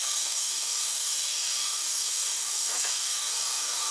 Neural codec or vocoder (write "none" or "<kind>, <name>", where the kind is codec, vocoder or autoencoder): codec, DAC